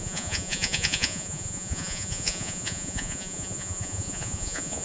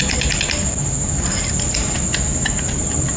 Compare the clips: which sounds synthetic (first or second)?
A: first